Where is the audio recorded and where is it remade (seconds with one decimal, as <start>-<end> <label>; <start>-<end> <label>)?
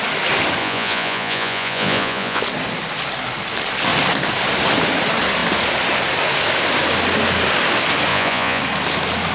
0.0-0.6 recorded; 0.6-2.4 remade; 2.4-8.1 recorded; 8.1-8.6 remade; 8.6-9.3 recorded